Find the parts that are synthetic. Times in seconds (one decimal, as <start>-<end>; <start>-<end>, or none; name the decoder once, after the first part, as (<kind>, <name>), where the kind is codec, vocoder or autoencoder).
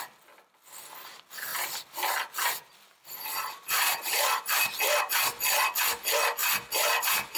1.5-5.0 (vocoder, BigVGAN v2)